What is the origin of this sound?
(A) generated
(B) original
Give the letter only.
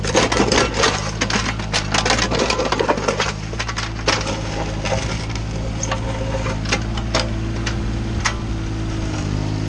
B